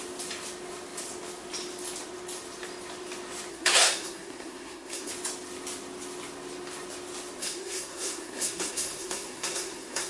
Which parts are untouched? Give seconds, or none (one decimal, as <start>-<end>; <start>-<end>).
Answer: 0.0-3.5; 5.1-7.4